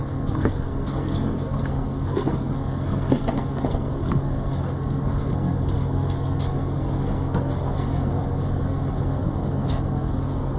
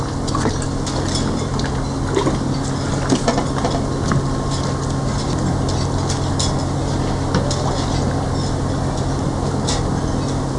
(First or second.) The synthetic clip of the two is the first